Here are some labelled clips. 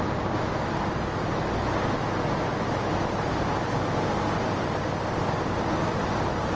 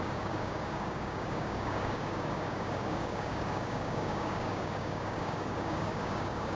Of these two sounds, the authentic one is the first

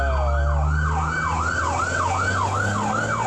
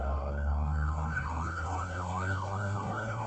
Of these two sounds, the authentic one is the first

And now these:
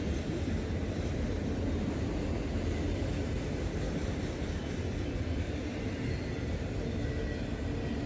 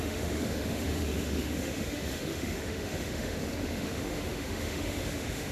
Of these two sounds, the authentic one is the first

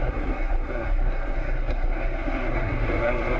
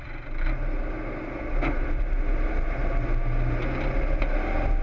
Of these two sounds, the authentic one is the second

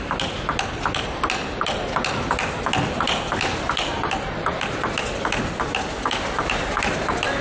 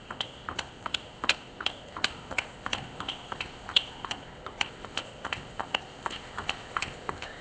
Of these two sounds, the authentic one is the first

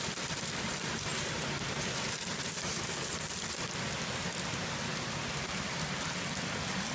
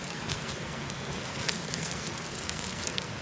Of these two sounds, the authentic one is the first